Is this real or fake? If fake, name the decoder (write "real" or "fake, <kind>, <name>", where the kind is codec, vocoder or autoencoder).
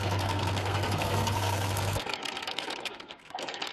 fake, codec, SNAC